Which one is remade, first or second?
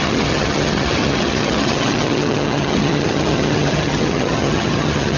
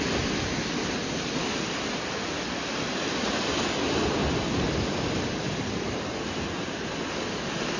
first